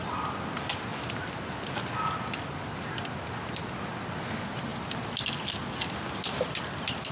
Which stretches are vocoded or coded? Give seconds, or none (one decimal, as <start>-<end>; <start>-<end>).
none